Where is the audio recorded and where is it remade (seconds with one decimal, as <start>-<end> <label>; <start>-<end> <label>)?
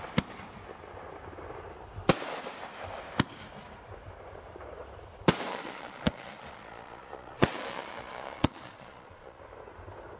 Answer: 0.0-5.5 recorded; 5.5-9.4 remade; 9.4-10.2 recorded